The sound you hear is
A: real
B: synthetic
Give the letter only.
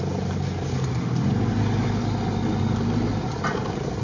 A